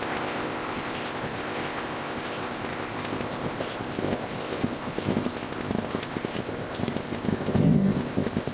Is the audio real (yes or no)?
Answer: no